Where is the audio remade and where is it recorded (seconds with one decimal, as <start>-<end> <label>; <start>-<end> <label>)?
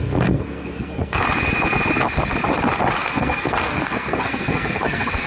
0.0-1.2 remade; 1.2-3.0 recorded; 3.0-5.3 remade